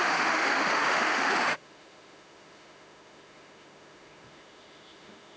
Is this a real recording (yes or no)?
no